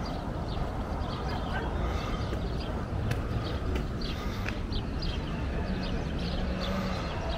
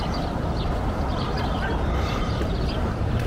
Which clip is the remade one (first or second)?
second